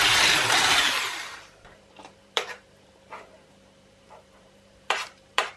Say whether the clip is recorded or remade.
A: remade